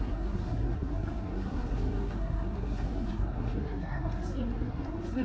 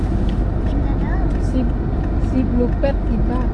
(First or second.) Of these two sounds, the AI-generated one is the first